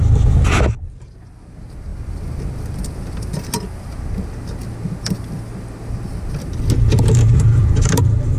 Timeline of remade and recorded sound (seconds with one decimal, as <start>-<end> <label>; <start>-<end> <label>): 0.0-6.9 recorded; 6.9-8.4 remade